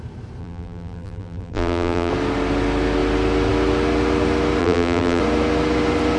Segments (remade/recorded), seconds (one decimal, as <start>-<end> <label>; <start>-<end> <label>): 0.0-0.4 recorded; 0.4-2.1 remade; 2.1-4.6 recorded; 4.6-5.2 remade; 5.2-6.2 recorded